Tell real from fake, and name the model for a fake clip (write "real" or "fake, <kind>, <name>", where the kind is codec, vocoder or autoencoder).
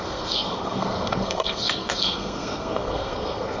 fake, codec, SNAC